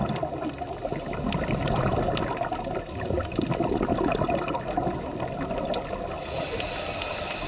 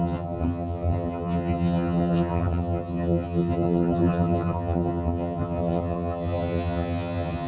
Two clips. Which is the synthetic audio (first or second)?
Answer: second